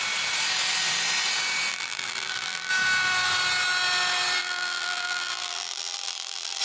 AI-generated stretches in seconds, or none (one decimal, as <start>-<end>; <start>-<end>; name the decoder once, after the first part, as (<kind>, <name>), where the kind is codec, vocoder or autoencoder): 1.7-2.7 (vocoder, BigVGAN v2); 4.4-6.6